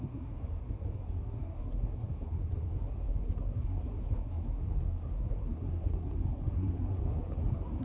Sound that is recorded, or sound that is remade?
remade